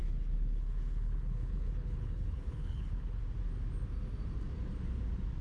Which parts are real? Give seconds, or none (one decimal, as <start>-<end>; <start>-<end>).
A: 3.2-5.4